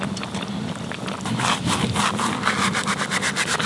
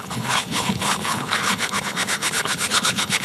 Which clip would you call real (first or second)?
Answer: first